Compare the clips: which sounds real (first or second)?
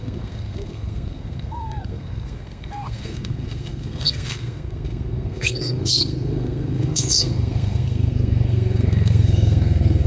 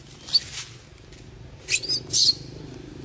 second